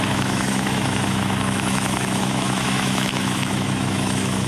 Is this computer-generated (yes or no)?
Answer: yes